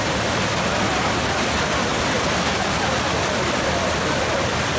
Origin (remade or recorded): remade